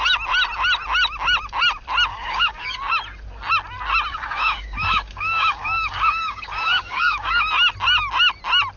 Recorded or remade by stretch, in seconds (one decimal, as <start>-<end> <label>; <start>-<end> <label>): 0.0-2.1 recorded; 2.1-2.8 remade; 2.8-4.1 recorded; 4.1-7.5 remade; 7.5-8.8 recorded